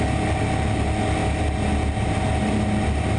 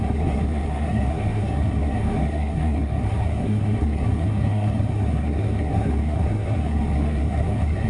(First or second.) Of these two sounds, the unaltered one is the first